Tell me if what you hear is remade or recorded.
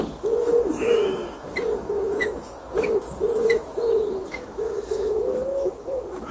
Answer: remade